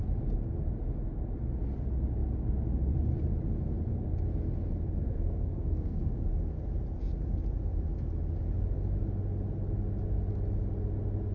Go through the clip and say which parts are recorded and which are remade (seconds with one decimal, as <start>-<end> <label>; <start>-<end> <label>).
0.0-5.0 recorded; 5.0-6.1 remade; 6.1-11.3 recorded

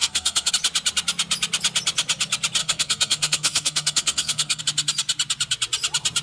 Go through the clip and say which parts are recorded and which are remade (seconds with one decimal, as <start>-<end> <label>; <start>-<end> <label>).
0.0-0.5 remade; 0.5-2.6 recorded; 2.6-4.6 remade; 4.6-6.2 recorded

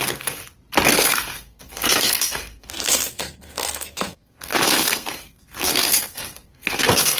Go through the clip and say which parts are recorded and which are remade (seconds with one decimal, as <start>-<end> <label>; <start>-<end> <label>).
0.0-0.4 remade; 0.4-0.9 recorded; 0.9-7.2 remade

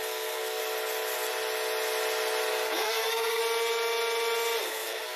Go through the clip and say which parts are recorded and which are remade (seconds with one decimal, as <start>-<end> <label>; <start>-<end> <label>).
0.0-0.6 remade; 0.6-2.5 recorded; 2.5-3.4 remade; 3.4-4.6 recorded; 4.6-5.2 remade

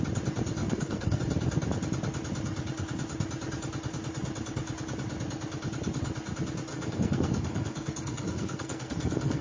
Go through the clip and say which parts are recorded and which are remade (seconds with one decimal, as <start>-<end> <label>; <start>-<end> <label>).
0.0-0.6 recorded; 0.6-1.2 remade; 1.2-6.7 recorded; 6.7-9.4 remade

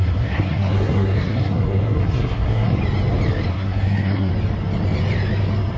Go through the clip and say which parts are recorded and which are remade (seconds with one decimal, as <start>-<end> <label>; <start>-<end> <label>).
0.0-2.8 remade; 2.8-3.5 recorded; 3.5-4.3 remade; 4.3-5.8 recorded